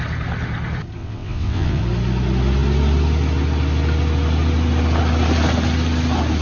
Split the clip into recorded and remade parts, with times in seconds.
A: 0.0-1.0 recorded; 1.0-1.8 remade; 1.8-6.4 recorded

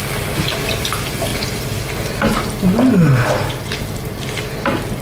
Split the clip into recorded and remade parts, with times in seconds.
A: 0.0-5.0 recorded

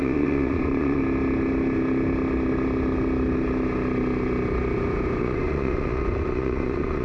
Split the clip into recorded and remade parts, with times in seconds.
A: 0.0-1.0 remade; 1.0-5.2 recorded; 5.2-7.0 remade